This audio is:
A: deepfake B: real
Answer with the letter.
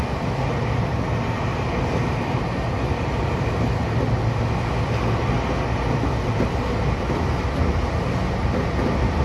B